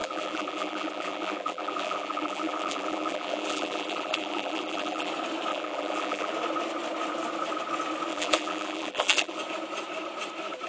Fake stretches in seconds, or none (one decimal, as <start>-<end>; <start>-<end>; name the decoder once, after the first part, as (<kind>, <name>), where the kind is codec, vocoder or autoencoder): 0.0-5.1 (vocoder, BigVGAN v2); 5.5-6.3; 8.1-9.4